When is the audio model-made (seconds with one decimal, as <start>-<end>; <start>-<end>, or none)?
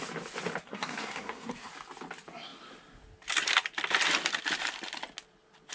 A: 0.6-1.7